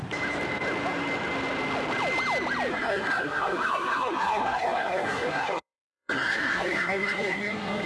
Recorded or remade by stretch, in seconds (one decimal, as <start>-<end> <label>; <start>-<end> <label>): 0.0-2.7 recorded; 2.7-7.9 remade